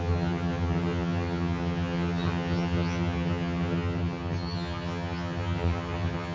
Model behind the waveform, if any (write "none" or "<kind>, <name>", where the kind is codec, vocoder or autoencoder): vocoder, HiFi-GAN